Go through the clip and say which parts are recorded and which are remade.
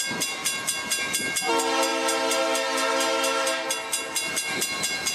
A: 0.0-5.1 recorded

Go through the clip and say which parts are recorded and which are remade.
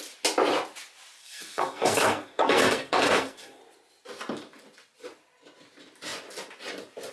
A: 0.0-1.2 recorded; 1.2-3.6 remade; 3.6-7.1 recorded